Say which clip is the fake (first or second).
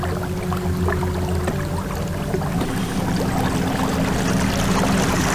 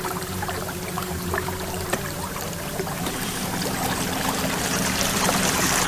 second